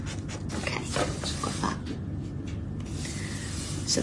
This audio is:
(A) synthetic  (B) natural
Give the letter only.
B